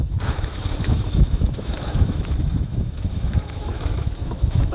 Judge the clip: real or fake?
fake